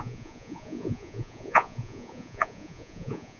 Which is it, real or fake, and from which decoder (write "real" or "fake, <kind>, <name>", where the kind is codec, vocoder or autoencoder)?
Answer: fake, vocoder, Vocos